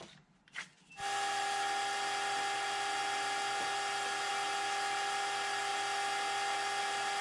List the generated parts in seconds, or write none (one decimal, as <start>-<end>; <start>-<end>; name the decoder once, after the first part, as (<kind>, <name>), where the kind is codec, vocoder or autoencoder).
none